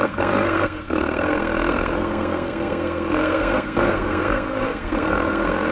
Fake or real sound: fake